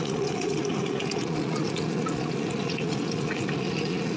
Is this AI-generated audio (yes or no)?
yes